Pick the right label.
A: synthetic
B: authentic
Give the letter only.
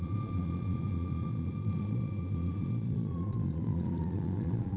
A